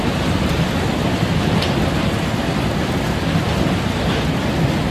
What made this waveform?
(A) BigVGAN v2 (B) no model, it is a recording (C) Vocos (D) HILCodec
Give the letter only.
B